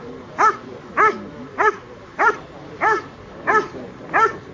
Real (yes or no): yes